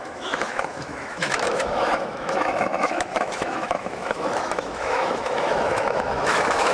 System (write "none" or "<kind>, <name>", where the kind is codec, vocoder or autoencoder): autoencoder, DAC-VAE